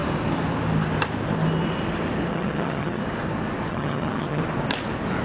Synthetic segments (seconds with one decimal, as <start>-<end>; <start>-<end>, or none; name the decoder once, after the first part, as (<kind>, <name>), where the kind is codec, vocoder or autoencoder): 2.3-3.0 (vocoder, HiFi-GAN); 3.7-4.4